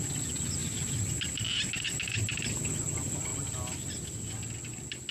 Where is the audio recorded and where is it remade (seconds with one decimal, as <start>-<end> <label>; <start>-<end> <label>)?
0.0-5.1 recorded